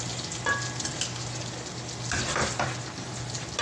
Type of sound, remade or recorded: recorded